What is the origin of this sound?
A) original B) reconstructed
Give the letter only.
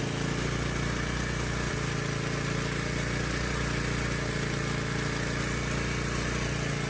A